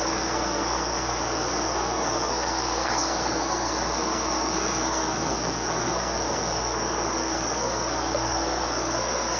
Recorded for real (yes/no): no